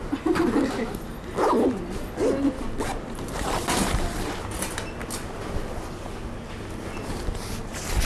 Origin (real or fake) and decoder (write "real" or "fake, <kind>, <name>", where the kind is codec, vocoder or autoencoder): real